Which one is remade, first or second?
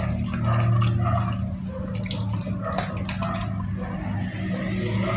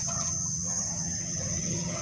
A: second